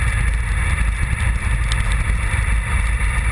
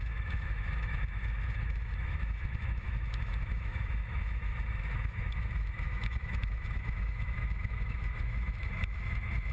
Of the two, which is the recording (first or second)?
first